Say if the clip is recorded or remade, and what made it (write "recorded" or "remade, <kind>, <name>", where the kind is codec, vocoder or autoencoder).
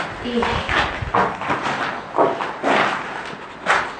recorded